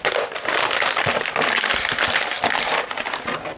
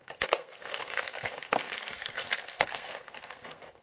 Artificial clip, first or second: second